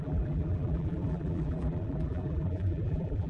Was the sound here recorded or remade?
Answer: remade